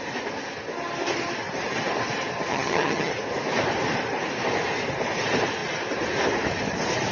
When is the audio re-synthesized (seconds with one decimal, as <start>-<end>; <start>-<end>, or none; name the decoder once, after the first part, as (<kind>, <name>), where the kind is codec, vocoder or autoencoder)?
2.5-3.1 (vocoder, HiFi-GAN)